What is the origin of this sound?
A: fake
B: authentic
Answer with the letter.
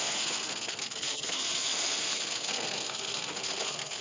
A